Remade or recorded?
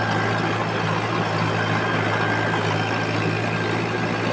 recorded